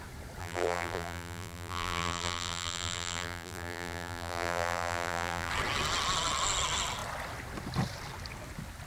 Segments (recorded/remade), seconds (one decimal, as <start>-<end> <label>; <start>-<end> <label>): 0.0-0.4 recorded; 0.4-5.5 remade; 5.5-8.9 recorded

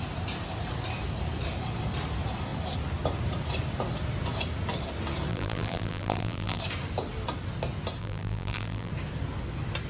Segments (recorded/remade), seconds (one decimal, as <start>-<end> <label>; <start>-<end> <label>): 0.0-5.3 recorded; 5.3-6.6 remade; 6.6-8.0 recorded; 8.0-8.9 remade; 8.9-9.9 recorded

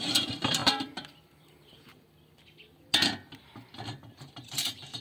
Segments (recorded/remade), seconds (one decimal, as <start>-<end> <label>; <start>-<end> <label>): 0.0-1.9 remade; 1.9-4.4 recorded; 4.4-5.0 remade

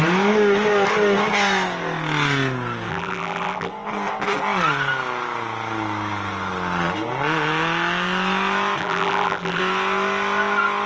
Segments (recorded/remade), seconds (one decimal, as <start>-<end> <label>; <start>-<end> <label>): 0.0-2.9 recorded; 2.9-3.7 remade; 3.7-8.8 recorded; 8.8-9.6 remade; 9.6-10.9 recorded